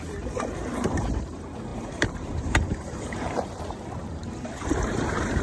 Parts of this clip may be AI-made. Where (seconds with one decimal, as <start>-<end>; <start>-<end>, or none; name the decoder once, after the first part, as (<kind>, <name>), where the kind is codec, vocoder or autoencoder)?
0.0-5.4 (vocoder, BigVGAN v2)